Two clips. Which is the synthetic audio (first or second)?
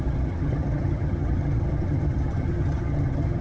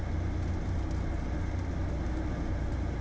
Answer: first